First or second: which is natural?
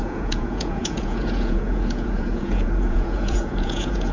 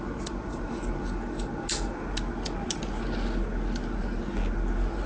second